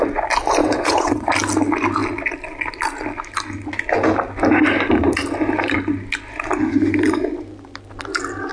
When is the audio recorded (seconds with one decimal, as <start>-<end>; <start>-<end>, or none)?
0.0-0.6; 1.3-8.5